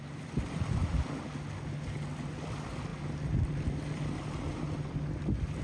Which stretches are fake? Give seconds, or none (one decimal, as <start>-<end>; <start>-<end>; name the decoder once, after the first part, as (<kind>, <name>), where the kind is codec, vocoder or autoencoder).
0.0-0.8 (vocoder, BigVGAN v2); 2.3-2.9